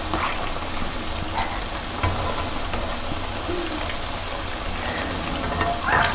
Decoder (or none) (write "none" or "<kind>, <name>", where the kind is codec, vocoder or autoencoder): none